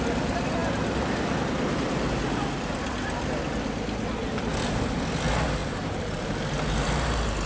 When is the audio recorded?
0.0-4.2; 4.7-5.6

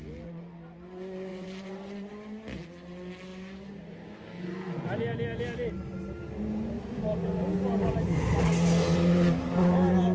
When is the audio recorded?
0.0-1.3; 2.1-10.1